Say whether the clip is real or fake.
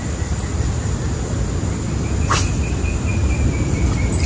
real